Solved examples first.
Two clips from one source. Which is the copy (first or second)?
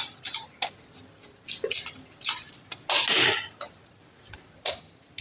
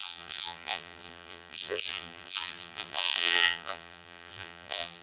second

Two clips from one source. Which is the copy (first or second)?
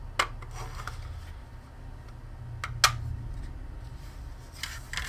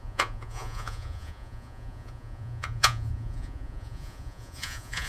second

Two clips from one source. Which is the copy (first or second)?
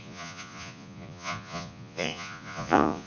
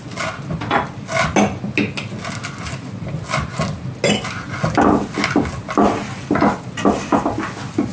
first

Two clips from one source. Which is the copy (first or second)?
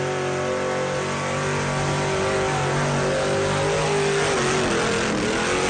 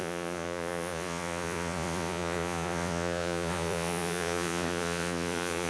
second